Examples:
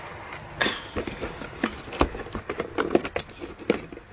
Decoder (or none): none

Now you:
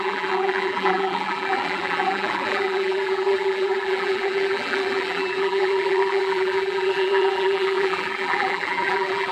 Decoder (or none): vocoder, BigVGAN v2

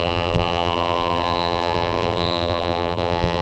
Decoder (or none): vocoder, BigVGAN v2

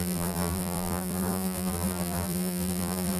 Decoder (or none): vocoder, BigVGAN v2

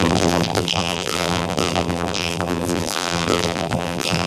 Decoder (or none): vocoder, BigVGAN v2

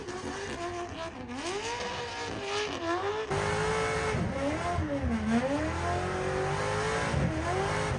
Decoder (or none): none